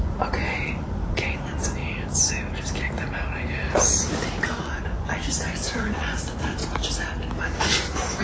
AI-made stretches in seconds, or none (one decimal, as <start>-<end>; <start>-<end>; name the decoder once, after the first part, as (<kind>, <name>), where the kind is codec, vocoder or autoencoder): 0.0-1.8 (vocoder, Vocos); 4.4-6.6; 7.6-8.2